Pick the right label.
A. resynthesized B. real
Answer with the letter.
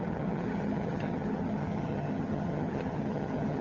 A